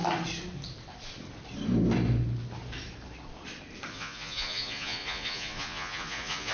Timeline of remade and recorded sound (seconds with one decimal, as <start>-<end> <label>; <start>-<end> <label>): 0.0-3.9 recorded; 3.9-6.5 remade